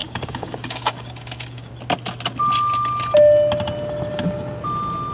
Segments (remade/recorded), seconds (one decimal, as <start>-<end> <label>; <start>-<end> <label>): 0.0-1.7 remade; 1.7-4.1 recorded; 4.1-4.6 remade; 4.6-5.1 recorded